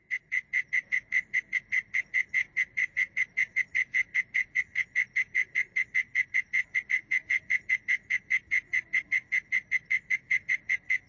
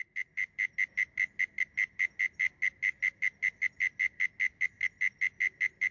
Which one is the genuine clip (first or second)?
second